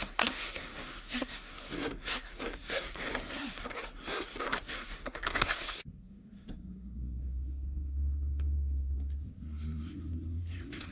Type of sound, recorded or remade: remade